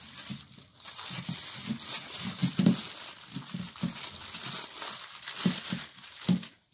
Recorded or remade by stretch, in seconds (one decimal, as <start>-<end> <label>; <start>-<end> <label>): 0.0-6.7 recorded